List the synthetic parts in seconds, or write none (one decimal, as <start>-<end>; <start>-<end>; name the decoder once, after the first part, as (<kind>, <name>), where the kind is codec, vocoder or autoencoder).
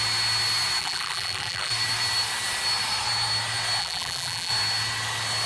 0.8-1.7 (vocoder, BigVGAN v2); 3.8-4.5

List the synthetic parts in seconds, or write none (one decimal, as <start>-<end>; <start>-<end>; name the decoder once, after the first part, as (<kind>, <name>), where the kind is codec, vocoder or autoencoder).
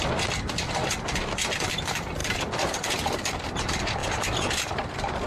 0.0-0.8 (vocoder, BigVGAN v2); 1.5-5.3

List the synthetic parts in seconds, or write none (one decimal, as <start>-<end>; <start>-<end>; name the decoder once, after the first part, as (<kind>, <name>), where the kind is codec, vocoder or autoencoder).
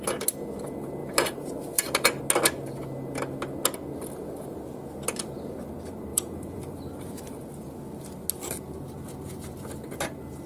1.0-2.2 (vocoder, BigVGAN v2); 6.1-7.4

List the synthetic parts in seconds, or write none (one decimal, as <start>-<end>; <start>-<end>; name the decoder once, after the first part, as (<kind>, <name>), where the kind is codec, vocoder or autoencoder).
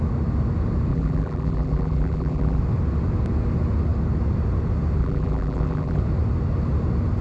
0.9-2.6 (vocoder, BigVGAN v2); 5.0-6.0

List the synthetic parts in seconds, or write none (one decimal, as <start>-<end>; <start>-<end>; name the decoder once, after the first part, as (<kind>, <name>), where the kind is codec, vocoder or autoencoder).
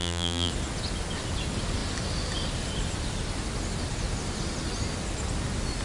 0.0-0.5 (vocoder, BigVGAN v2)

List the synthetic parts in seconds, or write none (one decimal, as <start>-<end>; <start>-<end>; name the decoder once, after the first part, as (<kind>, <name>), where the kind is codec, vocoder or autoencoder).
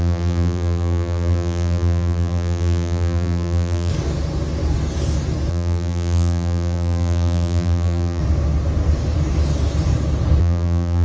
0.0-3.9 (vocoder, BigVGAN v2); 5.5-8.2; 10.4-11.0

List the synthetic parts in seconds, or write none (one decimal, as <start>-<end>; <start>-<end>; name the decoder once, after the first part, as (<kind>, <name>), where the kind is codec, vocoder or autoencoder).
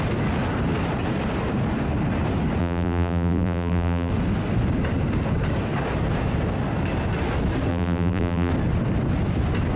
2.6-4.1 (vocoder, BigVGAN v2); 7.7-8.5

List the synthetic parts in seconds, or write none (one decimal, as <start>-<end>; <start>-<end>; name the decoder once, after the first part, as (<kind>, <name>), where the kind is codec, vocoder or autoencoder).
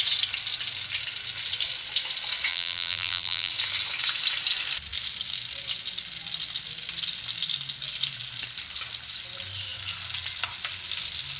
2.5-3.5 (vocoder, BigVGAN v2)